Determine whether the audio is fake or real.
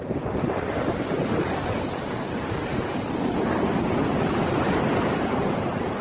real